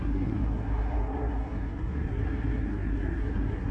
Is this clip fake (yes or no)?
yes